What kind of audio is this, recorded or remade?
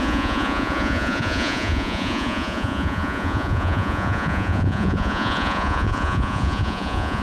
remade